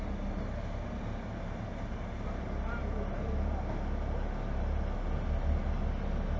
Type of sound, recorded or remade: recorded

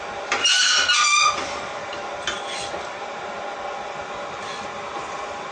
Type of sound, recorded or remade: recorded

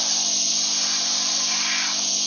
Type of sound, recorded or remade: remade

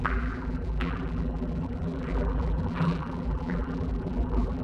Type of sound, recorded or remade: remade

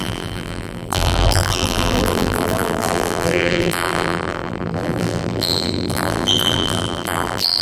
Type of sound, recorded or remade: remade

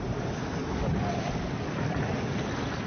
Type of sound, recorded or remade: recorded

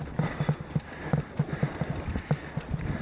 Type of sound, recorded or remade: remade